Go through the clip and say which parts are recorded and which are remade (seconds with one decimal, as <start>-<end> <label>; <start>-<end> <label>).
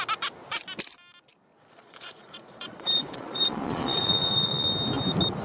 0.0-1.5 recorded; 1.5-4.7 remade; 4.7-5.4 recorded